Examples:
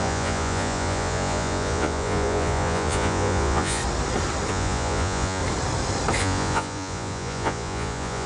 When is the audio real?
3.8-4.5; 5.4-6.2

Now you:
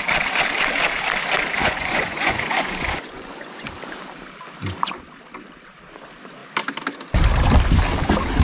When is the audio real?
0.0-1.6; 3.7-8.4

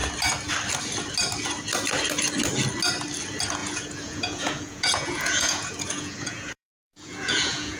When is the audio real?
0.0-3.6

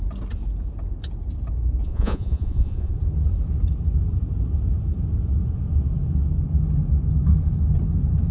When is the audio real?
0.0-1.8; 2.9-8.3

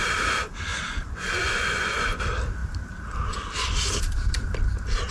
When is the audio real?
0.0-0.7; 2.2-5.1

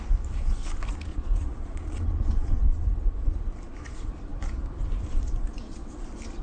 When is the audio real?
0.0-1.1; 2.6-6.4

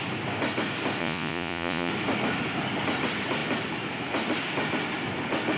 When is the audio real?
0.0-1.0; 1.9-5.6